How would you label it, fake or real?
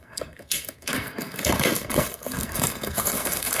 fake